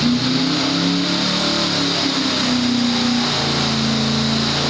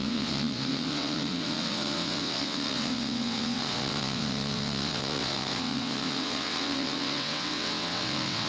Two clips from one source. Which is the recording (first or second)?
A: first